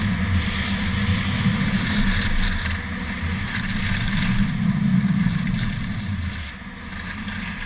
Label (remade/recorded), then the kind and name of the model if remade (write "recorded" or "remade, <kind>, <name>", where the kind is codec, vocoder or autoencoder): recorded